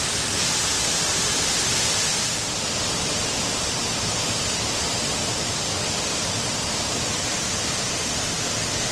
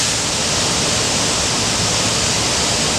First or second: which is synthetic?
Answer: first